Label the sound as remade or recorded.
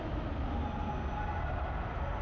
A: recorded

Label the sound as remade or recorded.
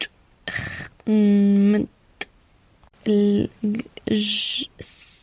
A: recorded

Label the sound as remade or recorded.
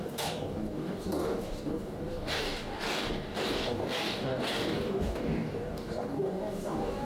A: remade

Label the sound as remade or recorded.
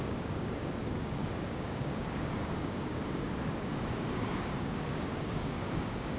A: remade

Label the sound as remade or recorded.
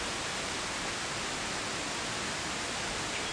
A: recorded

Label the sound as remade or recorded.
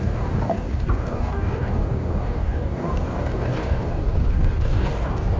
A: remade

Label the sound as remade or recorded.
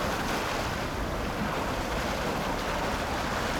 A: recorded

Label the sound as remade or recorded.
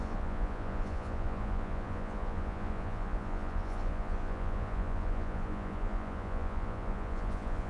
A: remade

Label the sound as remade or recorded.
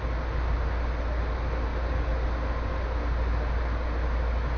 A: recorded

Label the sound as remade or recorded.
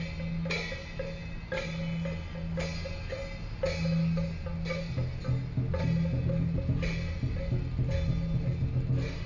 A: recorded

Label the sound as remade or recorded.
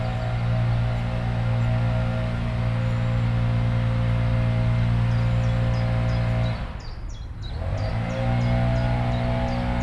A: recorded